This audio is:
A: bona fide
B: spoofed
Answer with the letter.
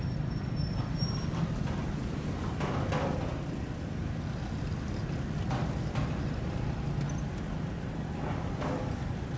A